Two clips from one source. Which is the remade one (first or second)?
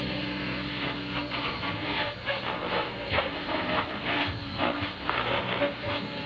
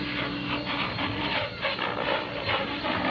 first